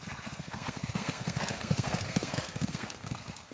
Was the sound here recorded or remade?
remade